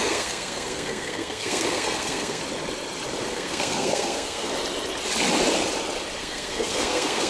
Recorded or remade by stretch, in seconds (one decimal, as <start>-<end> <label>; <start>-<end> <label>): 0.0-2.4 remade; 2.4-3.3 recorded; 3.3-4.5 remade; 4.5-6.2 recorded; 6.2-7.3 remade